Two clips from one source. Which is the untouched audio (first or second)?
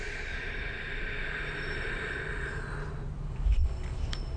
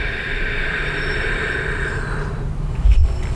first